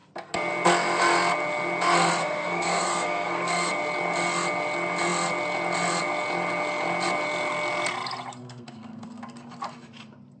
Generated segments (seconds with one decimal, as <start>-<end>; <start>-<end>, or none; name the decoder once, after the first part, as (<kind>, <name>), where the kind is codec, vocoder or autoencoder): 2.2-3.7 (codec, SNAC); 8.4-9.2